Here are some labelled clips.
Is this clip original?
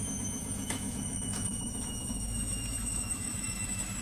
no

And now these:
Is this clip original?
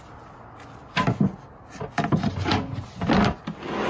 yes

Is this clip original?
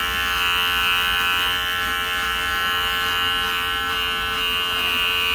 yes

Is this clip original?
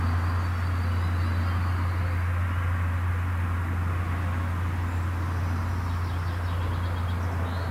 yes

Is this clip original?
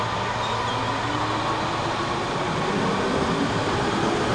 yes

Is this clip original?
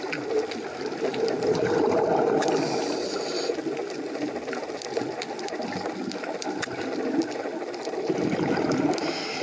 yes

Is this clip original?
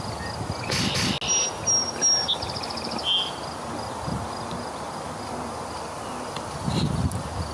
yes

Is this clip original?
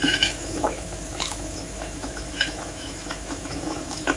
no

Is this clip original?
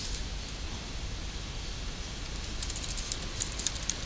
yes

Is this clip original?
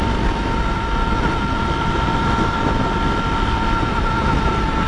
yes